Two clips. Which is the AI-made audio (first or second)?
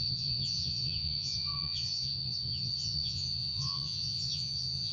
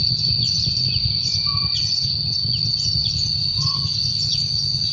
first